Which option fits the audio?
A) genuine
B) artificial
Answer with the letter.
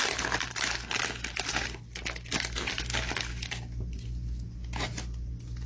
A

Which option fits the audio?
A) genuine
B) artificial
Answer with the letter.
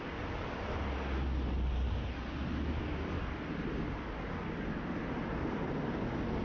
A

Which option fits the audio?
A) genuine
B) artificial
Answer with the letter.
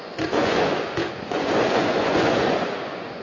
B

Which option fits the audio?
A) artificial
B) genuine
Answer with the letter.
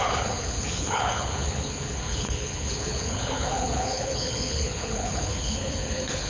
A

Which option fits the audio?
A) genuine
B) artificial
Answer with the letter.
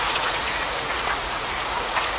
B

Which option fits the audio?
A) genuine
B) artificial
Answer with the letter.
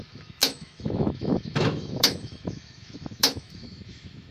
B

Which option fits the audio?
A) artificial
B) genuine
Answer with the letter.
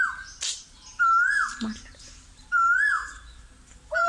B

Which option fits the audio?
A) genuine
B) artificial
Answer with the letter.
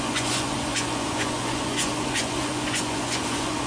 B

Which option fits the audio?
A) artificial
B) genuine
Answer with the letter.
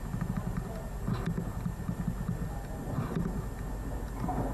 B